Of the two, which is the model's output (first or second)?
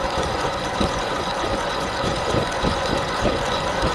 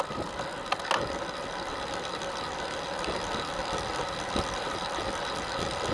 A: first